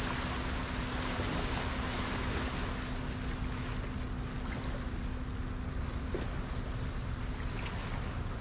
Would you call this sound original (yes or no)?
yes